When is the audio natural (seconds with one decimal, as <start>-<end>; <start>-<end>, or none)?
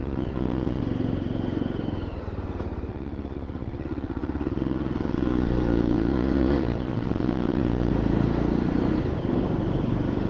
0.8-2.9; 7.9-10.3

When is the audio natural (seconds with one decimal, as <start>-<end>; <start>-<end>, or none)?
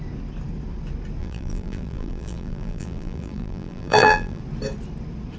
0.0-1.2; 4.4-5.4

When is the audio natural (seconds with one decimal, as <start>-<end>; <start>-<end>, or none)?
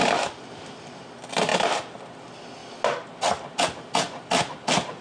0.0-0.5; 2.6-3.5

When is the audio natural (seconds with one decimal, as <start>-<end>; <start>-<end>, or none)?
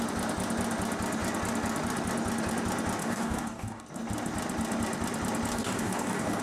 0.0-3.0; 3.8-5.5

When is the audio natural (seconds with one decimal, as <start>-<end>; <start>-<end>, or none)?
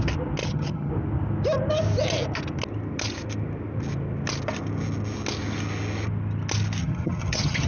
0.0-0.4; 0.9-6.8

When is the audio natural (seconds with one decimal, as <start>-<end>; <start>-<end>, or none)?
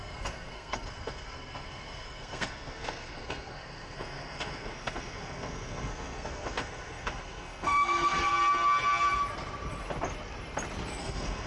8.3-11.0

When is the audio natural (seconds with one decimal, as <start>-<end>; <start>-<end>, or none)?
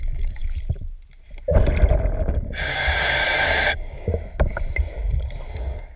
0.4-2.2; 4.1-5.5